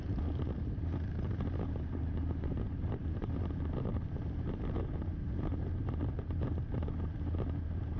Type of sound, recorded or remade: remade